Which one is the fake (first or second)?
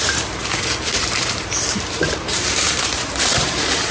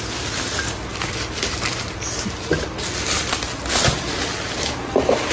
first